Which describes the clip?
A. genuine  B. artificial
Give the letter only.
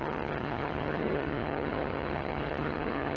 B